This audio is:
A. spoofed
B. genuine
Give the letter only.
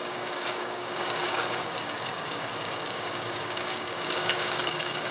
A